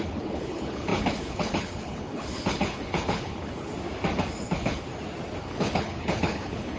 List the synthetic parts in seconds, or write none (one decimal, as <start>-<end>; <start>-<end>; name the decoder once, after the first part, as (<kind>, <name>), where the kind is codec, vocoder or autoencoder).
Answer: 0.0-3.7 (codec, HILCodec); 4.5-4.9; 5.4-6.8